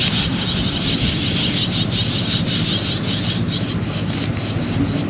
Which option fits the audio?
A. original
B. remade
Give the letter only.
A